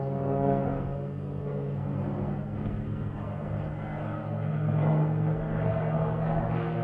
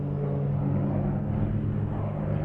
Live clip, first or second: second